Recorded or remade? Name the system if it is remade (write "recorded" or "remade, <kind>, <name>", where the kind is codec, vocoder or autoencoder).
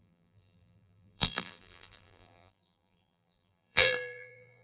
remade, vocoder, BigVGAN v2